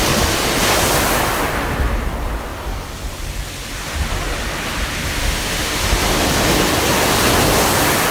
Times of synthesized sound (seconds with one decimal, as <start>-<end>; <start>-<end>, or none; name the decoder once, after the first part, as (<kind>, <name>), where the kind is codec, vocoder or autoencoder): 5.2-5.8 (autoencoder, DAC-VAE)